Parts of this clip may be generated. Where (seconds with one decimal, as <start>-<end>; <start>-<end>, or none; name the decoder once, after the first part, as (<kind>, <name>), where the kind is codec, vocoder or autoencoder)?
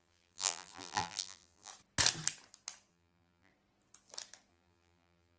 0.0-1.7 (vocoder, BigVGAN v2); 2.9-3.5; 4.5-5.4